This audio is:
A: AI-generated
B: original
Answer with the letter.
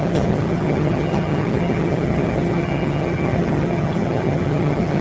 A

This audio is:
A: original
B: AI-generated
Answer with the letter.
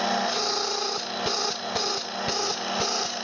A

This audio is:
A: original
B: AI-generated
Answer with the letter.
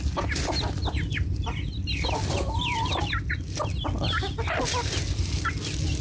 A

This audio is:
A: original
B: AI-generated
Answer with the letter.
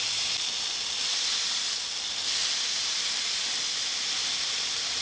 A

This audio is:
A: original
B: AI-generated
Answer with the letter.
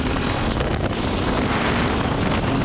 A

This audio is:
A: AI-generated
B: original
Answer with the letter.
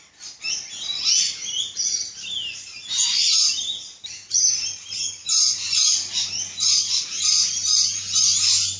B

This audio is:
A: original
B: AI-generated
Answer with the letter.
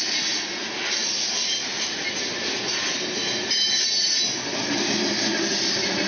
A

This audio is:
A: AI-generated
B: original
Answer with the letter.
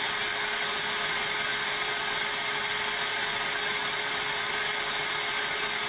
B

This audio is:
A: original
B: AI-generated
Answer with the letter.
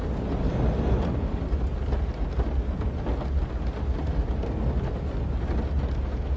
A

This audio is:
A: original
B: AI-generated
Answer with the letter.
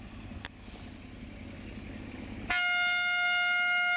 A